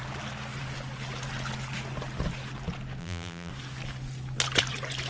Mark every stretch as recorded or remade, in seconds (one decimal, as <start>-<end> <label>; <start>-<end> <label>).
0.0-3.0 recorded; 3.0-3.5 remade; 3.5-5.1 recorded